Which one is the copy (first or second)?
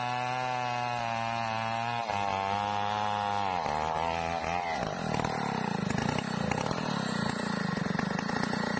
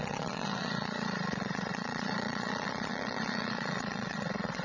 second